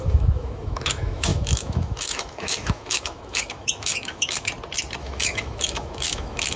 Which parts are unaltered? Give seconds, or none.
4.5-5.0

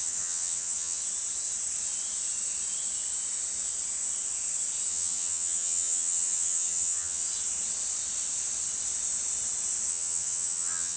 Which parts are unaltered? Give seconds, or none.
1.0-4.9; 7.2-9.9

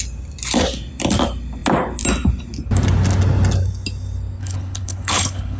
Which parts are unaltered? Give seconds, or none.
0.0-4.4